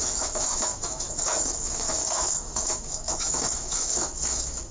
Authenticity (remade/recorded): remade